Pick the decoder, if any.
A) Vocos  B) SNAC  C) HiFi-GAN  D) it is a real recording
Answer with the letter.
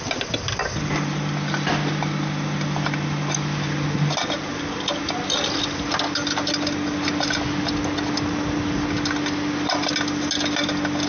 D